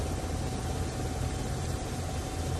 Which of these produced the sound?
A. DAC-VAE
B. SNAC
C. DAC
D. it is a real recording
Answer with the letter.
D